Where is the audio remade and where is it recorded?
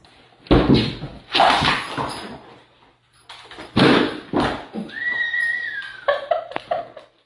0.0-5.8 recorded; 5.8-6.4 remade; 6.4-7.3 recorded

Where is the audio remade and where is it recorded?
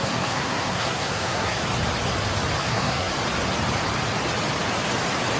0.0-1.6 remade; 1.6-2.6 recorded; 2.6-3.1 remade; 3.1-5.4 recorded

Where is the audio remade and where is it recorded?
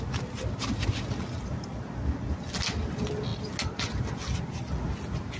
0.0-5.4 recorded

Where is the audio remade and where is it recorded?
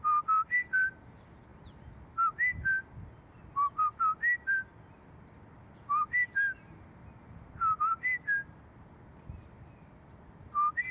0.0-10.9 recorded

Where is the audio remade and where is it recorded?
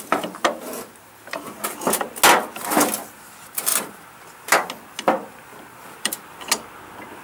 0.0-3.7 recorded; 3.7-4.2 remade; 4.2-5.5 recorded; 5.5-6.1 remade; 6.1-7.2 recorded